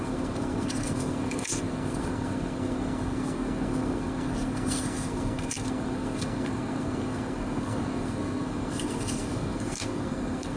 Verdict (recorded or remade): remade